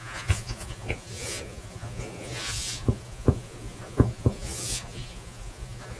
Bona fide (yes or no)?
no